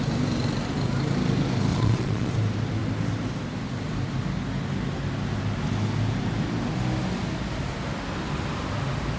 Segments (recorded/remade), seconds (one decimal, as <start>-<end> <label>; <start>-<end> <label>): 0.0-1.7 recorded; 1.7-2.3 remade; 2.3-9.2 recorded